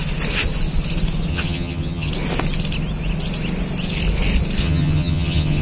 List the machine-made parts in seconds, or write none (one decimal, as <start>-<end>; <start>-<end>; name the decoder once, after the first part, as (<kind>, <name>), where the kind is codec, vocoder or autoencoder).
1.3-2.1 (vocoder, HiFi-GAN); 4.6-5.6